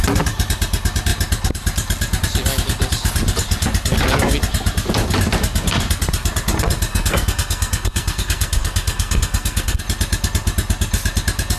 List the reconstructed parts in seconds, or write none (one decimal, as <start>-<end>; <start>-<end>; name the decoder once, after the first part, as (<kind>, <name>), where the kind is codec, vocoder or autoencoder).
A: 6.9-9.8 (codec, SNAC)